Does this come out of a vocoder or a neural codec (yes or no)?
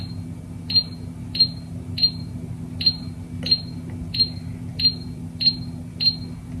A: no